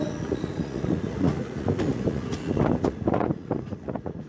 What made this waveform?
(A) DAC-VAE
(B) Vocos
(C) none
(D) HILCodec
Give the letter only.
B